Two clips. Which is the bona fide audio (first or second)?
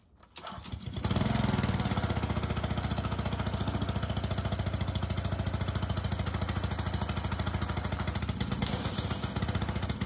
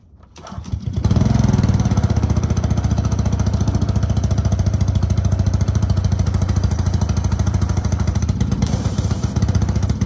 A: first